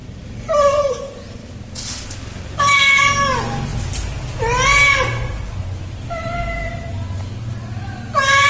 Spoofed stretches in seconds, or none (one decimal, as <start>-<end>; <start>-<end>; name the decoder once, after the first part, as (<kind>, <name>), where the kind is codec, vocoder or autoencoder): 0.0-0.8 (vocoder, BigVGAN v2); 1.4-3.1